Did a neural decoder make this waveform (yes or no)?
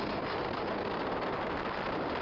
no